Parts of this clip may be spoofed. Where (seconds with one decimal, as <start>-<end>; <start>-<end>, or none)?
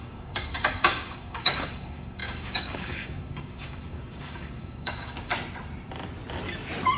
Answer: 0.0-5.3